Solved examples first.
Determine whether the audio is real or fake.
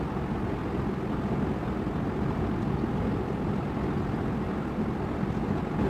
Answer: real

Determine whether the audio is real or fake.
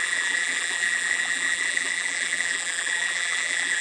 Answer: fake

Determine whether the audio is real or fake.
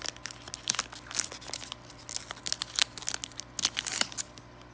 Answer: real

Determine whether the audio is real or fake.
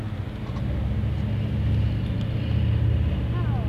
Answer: real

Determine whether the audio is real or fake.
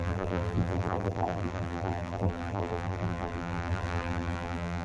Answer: fake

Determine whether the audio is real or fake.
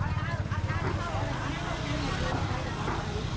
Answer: real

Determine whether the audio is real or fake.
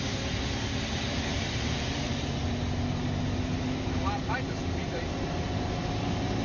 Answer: real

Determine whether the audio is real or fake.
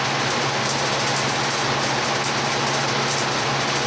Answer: real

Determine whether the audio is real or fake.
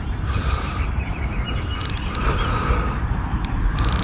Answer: fake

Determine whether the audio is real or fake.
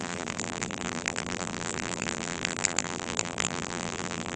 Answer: fake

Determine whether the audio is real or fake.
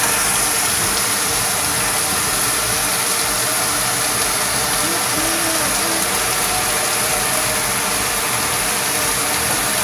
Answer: real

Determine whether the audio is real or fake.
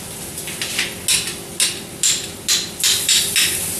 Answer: real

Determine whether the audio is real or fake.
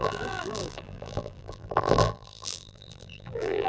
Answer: fake